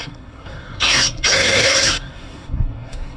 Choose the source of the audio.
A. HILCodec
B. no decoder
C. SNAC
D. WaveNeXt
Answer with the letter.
C